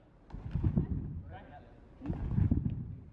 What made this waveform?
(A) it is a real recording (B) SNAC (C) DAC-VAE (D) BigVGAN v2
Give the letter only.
A